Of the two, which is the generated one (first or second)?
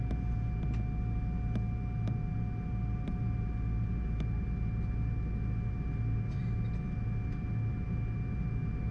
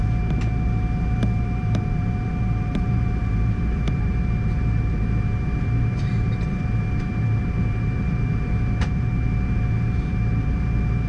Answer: second